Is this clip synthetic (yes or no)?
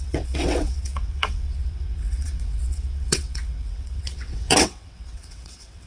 yes